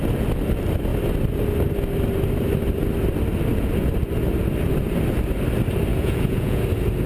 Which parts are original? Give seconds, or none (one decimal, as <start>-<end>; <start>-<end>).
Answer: 0.0-5.9; 6.6-7.1